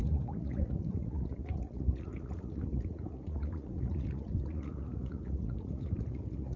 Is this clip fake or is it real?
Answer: fake